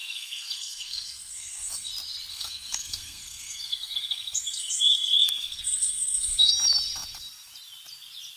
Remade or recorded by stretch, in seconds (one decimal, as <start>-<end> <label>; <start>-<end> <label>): 0.0-1.9 remade; 1.9-2.3 recorded; 2.3-6.5 remade; 6.5-8.4 recorded